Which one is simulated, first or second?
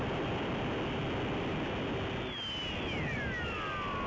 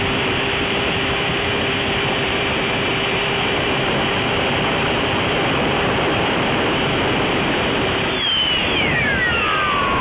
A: second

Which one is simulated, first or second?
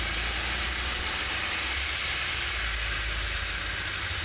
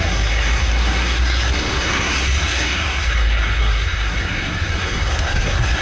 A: second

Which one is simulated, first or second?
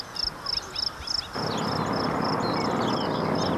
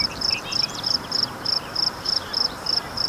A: second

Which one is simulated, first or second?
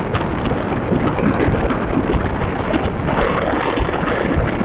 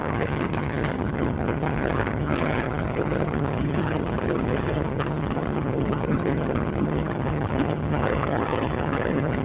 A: second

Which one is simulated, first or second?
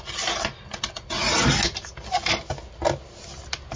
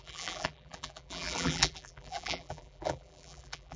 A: second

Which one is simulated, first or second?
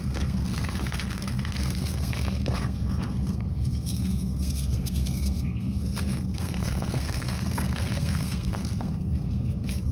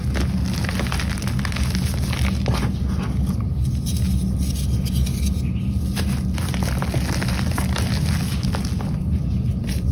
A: first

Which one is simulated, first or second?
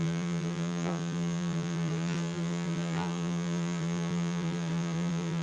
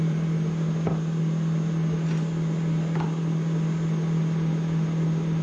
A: first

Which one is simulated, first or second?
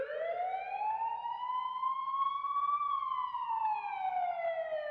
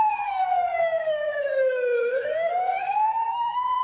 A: second